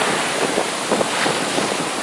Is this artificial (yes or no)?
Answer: no